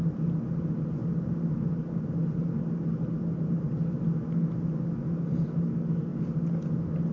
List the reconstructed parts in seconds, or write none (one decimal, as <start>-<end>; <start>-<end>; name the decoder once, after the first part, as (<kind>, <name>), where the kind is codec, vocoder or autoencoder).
none